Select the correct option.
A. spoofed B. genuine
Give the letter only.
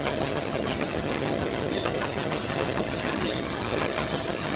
A